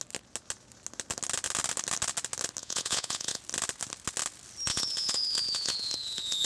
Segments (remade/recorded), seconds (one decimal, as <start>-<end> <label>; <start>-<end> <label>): 0.0-2.6 recorded; 2.6-3.4 remade; 3.4-4.7 recorded; 4.7-6.5 remade